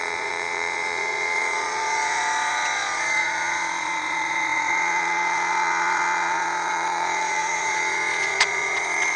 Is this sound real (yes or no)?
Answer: no